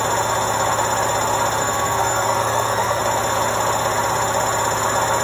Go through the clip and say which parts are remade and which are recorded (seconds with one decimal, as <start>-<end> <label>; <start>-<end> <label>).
0.0-1.6 recorded; 1.6-3.0 remade; 3.0-5.2 recorded